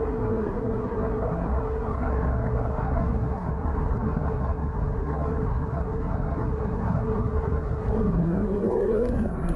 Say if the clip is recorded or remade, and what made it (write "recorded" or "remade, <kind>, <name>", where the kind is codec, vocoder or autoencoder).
remade, codec, SNAC